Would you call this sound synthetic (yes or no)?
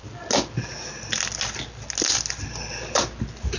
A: no